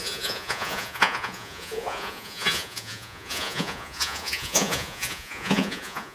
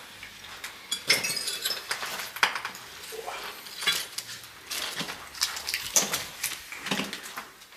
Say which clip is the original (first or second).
second